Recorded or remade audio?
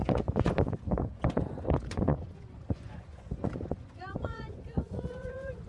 remade